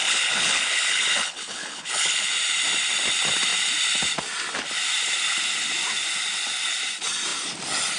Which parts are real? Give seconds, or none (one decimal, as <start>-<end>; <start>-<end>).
2.3-8.0